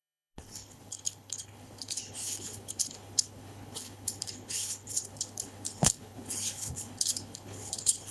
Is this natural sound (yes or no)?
no